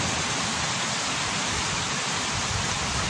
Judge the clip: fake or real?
real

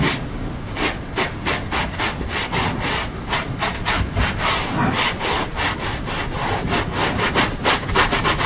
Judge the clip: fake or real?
real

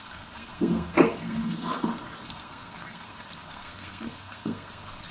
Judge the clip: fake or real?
fake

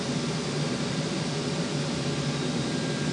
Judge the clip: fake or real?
real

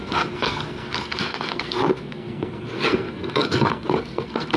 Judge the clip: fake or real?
fake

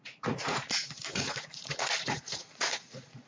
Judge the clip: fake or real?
fake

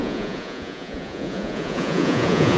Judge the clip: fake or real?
fake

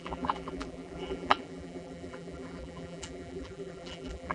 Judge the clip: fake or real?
fake